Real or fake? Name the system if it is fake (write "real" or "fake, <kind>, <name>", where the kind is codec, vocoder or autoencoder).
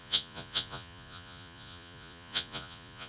fake, vocoder, Vocos